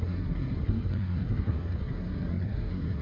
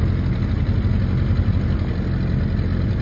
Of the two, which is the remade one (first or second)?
first